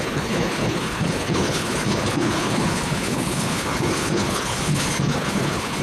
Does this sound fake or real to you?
fake